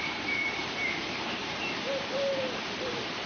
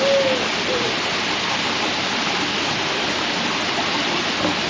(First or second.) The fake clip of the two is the first